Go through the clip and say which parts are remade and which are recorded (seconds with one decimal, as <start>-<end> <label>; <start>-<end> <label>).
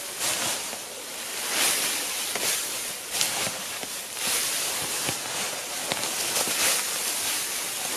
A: 0.0-8.0 recorded